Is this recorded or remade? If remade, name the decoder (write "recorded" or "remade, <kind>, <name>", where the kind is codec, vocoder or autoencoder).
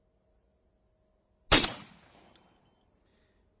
recorded